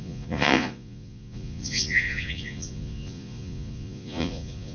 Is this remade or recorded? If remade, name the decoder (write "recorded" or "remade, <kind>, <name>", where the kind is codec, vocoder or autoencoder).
remade, vocoder, Vocos